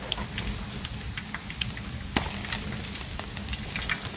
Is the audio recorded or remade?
recorded